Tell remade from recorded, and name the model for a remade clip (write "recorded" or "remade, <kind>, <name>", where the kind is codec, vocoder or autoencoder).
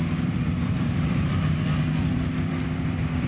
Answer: remade, vocoder, BigVGAN v2